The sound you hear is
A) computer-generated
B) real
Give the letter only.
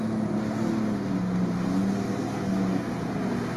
B